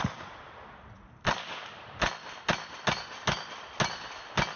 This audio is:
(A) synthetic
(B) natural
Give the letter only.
B